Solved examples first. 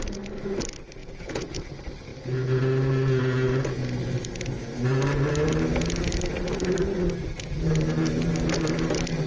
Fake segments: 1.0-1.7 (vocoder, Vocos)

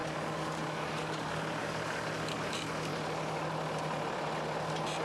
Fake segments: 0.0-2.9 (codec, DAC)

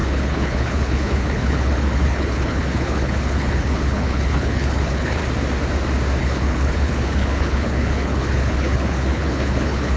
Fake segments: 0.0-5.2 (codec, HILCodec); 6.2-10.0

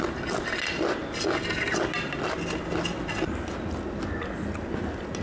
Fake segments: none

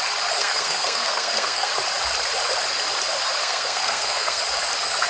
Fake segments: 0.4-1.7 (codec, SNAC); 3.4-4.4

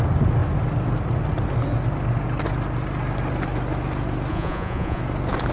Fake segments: 4.3-5.0 (vocoder, Vocos)

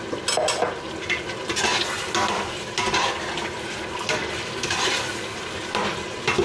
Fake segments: 1.7-4.4 (vocoder, BigVGAN v2)